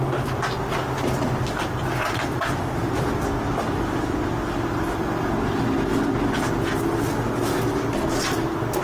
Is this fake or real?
real